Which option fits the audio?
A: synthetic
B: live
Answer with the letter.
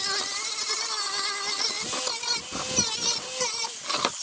B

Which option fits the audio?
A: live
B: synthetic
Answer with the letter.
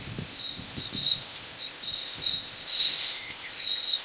B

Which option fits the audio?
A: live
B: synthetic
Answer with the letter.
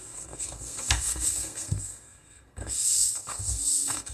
B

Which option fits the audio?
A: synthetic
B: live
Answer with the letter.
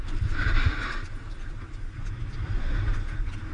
B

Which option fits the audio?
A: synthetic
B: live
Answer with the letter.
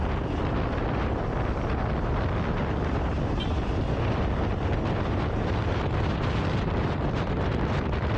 B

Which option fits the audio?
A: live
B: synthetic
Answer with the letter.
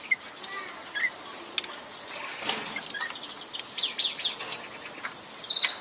A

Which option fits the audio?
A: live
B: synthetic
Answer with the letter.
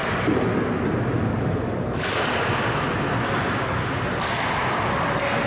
A